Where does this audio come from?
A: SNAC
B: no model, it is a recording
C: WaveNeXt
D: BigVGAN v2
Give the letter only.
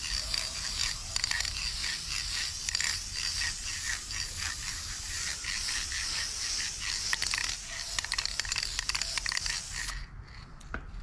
B